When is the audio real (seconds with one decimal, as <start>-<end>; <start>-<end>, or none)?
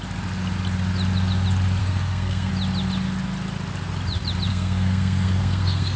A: 0.0-1.8; 2.5-4.5